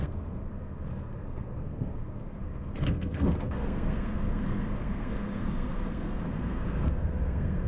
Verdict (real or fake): fake